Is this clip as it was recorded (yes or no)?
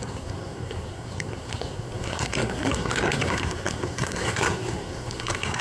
no